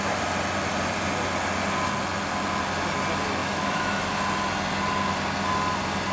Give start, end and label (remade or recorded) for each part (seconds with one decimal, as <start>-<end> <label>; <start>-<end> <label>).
0.0-3.4 recorded; 3.4-4.0 remade; 4.0-6.1 recorded